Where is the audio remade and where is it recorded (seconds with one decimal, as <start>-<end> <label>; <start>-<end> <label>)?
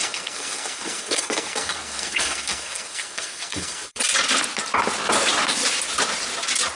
0.0-4.0 remade; 4.0-6.7 recorded